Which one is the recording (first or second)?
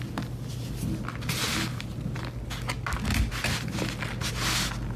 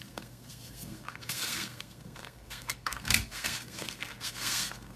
first